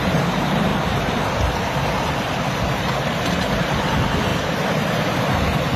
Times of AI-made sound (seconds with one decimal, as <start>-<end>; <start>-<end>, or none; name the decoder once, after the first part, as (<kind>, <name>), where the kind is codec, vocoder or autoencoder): none